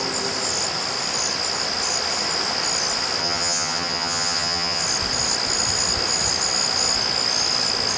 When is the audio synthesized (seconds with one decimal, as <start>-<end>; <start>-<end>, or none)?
3.2-4.8